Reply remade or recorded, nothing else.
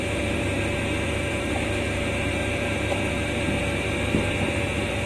remade